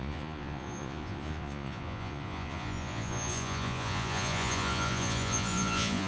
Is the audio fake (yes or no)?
yes